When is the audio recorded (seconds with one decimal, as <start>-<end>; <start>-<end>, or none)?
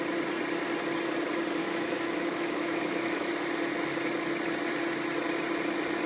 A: 0.0-1.6; 3.3-6.1